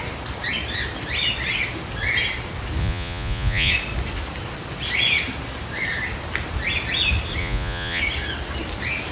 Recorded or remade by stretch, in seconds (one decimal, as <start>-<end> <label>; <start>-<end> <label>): 0.0-2.8 recorded; 2.8-3.7 remade; 3.7-7.4 recorded; 7.4-8.0 remade; 8.0-9.1 recorded